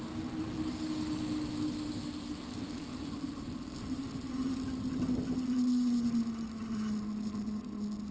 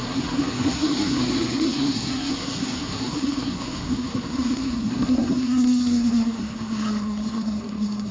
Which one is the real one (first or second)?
first